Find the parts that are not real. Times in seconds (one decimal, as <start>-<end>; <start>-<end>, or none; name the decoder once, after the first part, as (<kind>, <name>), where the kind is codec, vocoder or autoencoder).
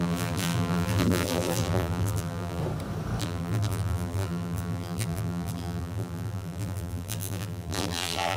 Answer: 0.0-2.6 (vocoder, BigVGAN v2); 3.2-8.4